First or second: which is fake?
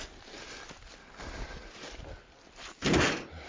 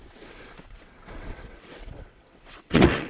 second